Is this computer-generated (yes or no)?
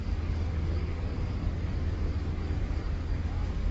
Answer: yes